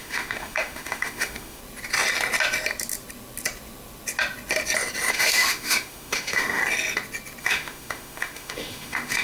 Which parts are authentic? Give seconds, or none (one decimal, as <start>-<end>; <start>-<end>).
1.6-5.1; 6.6-7.4